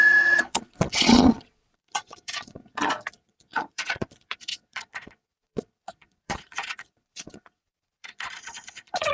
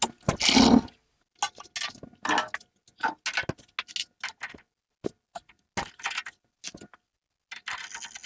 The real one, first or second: second